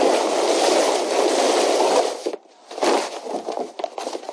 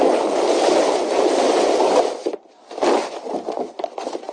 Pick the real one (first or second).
first